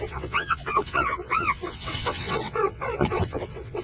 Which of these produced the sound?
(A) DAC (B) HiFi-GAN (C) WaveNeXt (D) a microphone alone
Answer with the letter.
C